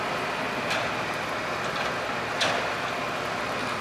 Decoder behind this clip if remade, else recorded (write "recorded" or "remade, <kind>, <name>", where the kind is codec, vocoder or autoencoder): recorded